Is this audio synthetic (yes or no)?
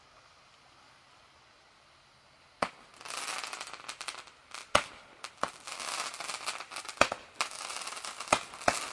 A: no